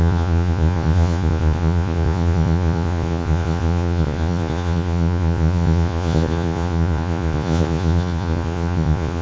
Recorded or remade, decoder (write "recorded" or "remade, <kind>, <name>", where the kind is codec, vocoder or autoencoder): remade, vocoder, Vocos